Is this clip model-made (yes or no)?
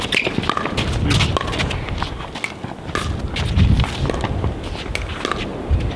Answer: no